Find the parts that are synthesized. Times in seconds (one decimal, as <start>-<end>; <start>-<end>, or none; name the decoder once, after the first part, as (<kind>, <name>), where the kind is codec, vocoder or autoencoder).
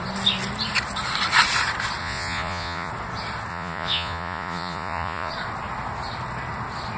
2.0-2.9 (vocoder, Vocos); 3.5-5.3